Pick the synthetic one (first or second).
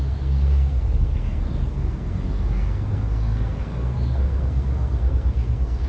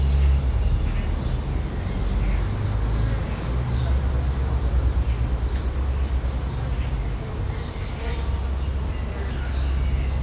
first